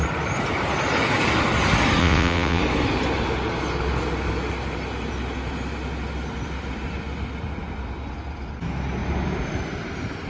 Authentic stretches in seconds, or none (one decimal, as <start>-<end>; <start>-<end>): 0.0-2.0; 2.6-10.3